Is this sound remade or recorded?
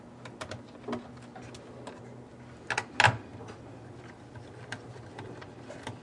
recorded